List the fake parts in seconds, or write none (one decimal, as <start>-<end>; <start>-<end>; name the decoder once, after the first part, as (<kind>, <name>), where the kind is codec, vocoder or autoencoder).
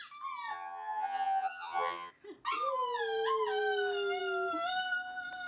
0.5-2.1 (vocoder, HiFi-GAN)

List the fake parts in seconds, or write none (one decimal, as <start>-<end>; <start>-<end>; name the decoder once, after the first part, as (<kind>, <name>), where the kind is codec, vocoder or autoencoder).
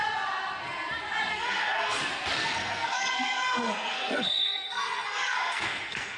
1.3-2.0 (codec, SNAC); 2.4-6.2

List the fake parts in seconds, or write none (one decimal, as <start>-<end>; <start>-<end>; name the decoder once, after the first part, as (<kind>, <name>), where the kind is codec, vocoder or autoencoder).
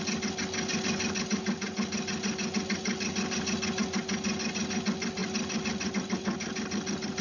none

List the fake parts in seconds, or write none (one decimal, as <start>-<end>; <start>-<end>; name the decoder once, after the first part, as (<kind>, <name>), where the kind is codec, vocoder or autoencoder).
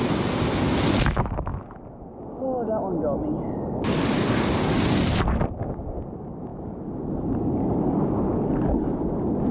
none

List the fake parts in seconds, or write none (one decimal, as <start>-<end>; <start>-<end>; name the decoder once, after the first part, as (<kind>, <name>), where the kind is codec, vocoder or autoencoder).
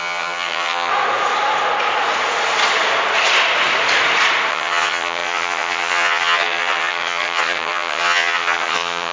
0.0-0.9 (vocoder, HiFi-GAN); 4.5-9.1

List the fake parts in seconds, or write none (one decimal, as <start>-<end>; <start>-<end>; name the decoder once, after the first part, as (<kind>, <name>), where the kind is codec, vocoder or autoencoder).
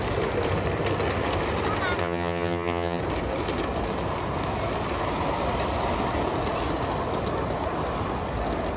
2.0-3.0 (vocoder, HiFi-GAN)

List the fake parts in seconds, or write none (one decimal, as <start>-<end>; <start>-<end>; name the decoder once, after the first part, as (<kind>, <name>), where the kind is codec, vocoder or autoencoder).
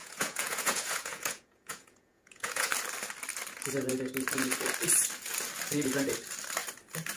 0.0-2.7 (vocoder, Vocos)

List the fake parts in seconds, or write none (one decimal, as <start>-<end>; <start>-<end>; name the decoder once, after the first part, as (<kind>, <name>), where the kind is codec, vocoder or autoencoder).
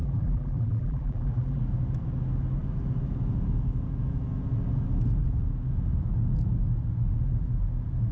0.0-1.6 (vocoder, BigVGAN v2)